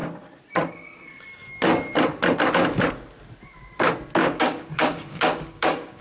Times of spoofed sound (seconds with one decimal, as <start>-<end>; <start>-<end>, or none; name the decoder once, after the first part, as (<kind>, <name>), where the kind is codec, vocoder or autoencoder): 4.2-6.0 (codec, DAC)